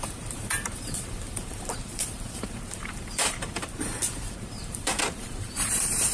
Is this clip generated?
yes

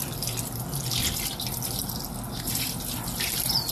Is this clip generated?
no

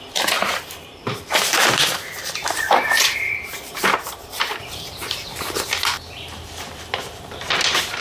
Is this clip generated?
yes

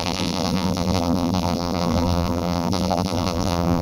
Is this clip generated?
yes